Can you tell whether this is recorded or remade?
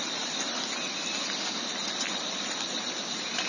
recorded